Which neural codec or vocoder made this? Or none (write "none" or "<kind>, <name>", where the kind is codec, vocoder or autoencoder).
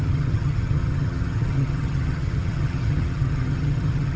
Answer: vocoder, HiFi-GAN